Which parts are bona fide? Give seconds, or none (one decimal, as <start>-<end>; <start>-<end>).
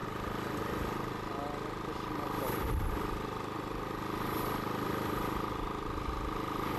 0.0-6.8